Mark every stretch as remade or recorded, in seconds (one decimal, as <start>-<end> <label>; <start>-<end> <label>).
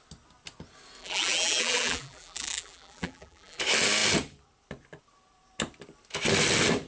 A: 0.0-1.0 recorded; 1.0-3.6 remade; 3.6-6.9 recorded